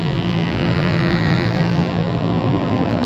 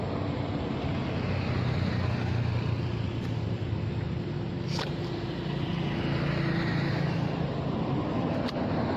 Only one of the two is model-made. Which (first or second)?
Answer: first